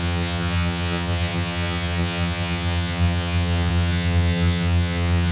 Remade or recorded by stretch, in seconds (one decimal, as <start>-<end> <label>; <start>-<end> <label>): 0.0-5.3 remade